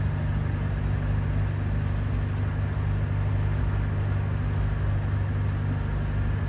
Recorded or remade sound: recorded